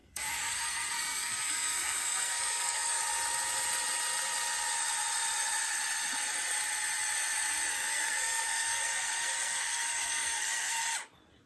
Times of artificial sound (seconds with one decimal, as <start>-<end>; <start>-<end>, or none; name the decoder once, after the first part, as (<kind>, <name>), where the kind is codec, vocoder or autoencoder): 0.0-3.0 (codec, SNAC); 7.7-10.8